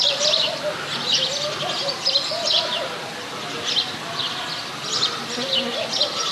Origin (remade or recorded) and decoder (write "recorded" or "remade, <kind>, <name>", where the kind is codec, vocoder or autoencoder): recorded